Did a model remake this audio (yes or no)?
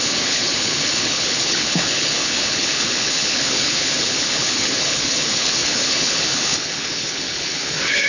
yes